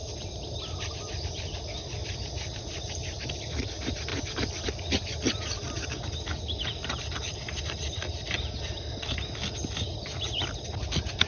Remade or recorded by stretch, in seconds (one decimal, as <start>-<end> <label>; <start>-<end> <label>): 0.0-11.3 recorded